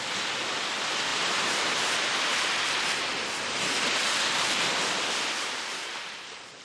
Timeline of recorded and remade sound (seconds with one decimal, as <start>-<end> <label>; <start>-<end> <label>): 0.0-6.6 recorded